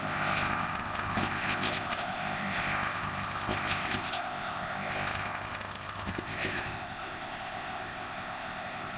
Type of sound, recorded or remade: remade